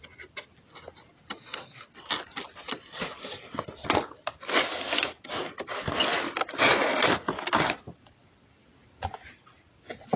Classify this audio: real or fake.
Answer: real